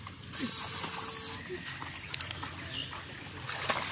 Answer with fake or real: real